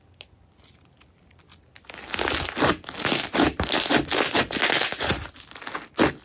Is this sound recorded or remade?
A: recorded